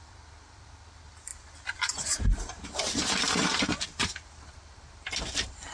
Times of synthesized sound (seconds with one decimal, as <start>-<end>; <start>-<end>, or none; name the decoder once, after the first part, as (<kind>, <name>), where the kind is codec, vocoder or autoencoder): 1.3-3.6 (vocoder, BigVGAN v2)